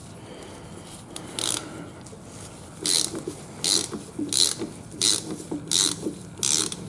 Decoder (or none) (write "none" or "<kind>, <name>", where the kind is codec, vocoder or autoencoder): none